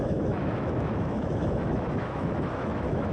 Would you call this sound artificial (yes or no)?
yes